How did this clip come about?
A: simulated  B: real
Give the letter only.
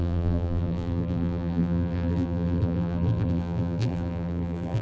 A